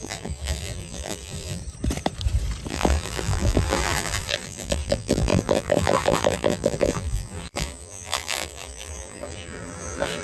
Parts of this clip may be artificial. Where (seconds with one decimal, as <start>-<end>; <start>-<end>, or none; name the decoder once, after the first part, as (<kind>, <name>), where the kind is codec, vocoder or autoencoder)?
0.0-1.6 (vocoder, BigVGAN v2); 2.7-10.2